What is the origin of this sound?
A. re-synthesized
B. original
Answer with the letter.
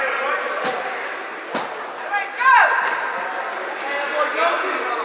B